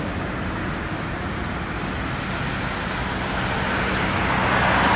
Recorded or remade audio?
recorded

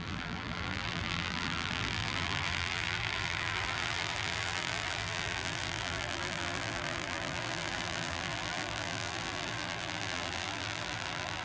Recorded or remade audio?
remade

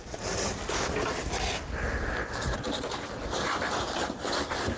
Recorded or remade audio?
recorded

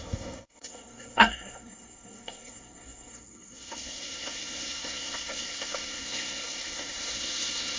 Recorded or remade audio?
remade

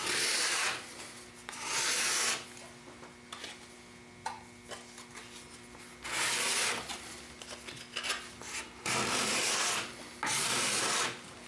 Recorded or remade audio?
recorded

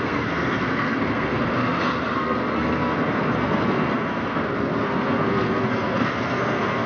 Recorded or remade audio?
remade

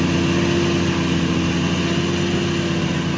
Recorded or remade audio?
recorded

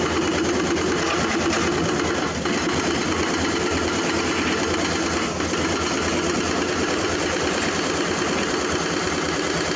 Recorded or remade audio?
recorded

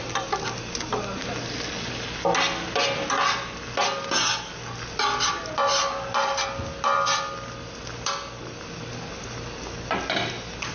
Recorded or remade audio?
recorded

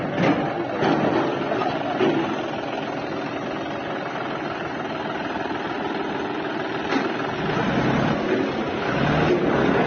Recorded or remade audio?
recorded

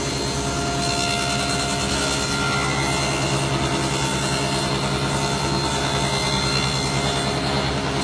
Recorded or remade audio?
recorded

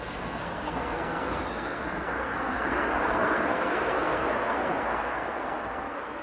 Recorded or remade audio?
remade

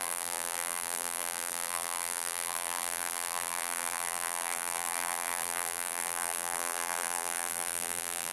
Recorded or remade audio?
remade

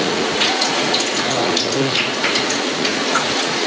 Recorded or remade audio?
remade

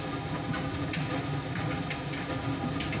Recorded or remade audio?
recorded